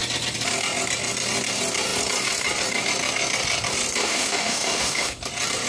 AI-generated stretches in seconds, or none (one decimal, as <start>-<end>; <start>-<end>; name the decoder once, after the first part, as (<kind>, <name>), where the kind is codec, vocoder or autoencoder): 4.0-5.2 (autoencoder, DAC-VAE)